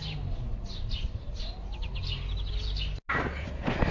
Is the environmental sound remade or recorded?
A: recorded